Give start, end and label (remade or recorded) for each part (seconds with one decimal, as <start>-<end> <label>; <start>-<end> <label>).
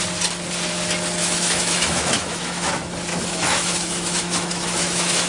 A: 0.0-1.2 recorded; 1.2-2.7 remade; 2.7-3.1 recorded; 3.1-5.3 remade